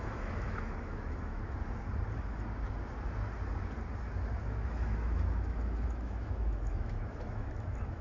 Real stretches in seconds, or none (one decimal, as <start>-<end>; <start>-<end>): 1.4-4.4